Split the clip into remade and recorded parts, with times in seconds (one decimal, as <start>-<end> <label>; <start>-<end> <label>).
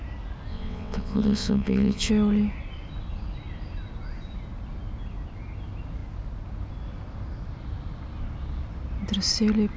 0.0-0.5 recorded; 0.5-2.1 remade; 2.1-9.8 recorded